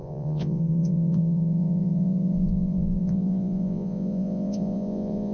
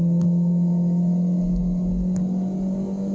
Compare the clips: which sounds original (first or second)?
second